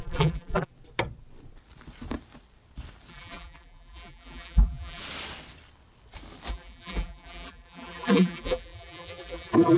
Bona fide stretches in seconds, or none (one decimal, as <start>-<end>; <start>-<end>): 0.7-3.1; 5.0-6.5